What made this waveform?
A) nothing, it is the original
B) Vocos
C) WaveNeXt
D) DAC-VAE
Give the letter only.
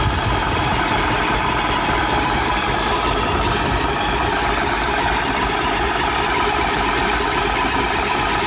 A